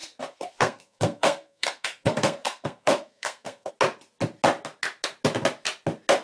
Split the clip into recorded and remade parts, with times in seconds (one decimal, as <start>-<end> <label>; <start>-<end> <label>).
0.0-3.7 remade; 3.7-6.2 recorded